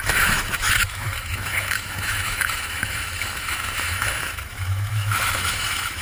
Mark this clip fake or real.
fake